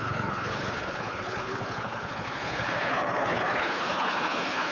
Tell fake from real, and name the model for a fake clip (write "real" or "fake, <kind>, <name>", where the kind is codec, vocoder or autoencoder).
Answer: fake, codec, HILCodec